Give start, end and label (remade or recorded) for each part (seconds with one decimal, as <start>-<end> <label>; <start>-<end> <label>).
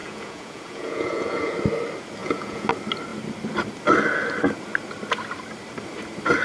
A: 0.0-1.5 remade; 1.5-2.2 recorded; 2.2-2.7 remade; 2.7-6.4 recorded